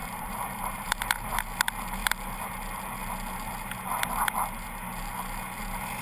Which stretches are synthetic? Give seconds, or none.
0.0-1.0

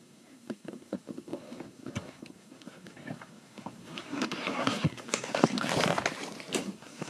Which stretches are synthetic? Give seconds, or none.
0.0-5.7; 6.6-7.1

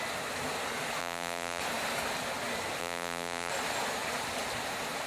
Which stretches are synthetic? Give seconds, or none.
1.0-1.6; 2.8-3.5

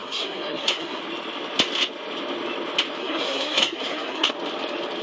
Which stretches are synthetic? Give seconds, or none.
0.0-1.0; 3.0-4.3

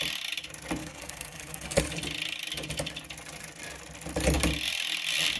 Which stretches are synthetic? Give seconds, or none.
0.8-1.8

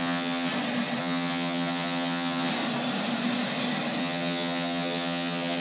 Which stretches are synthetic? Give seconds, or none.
0.0-0.5; 1.0-2.5; 4.0-5.6

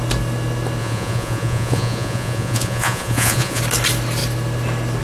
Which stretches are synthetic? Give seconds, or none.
0.8-3.6